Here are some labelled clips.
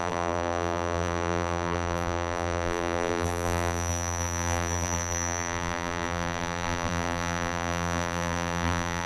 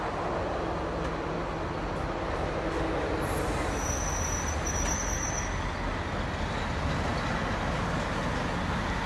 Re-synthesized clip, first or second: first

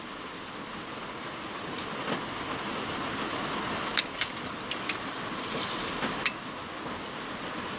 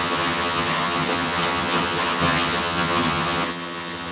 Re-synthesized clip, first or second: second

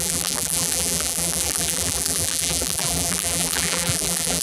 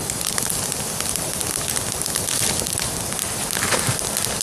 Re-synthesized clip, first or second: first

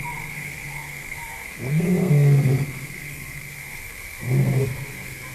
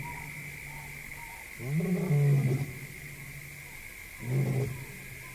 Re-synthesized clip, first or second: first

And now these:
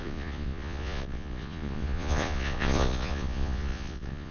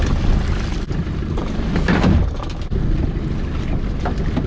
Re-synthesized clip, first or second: first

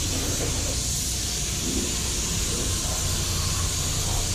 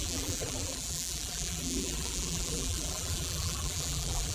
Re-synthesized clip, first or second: second